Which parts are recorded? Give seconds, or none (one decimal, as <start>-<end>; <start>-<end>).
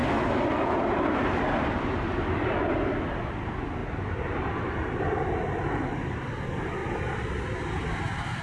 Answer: 0.0-3.8; 5.0-8.4